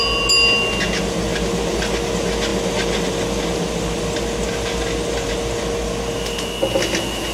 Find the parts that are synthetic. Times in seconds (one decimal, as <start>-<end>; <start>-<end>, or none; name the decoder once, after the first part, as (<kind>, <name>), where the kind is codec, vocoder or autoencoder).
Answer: none